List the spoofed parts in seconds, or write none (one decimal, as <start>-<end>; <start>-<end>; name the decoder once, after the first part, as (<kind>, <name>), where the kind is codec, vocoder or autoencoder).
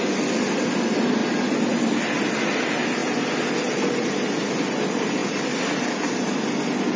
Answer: 5.2-5.9 (vocoder, BigVGAN v2)